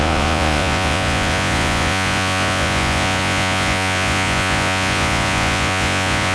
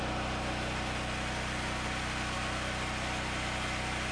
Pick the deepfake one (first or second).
first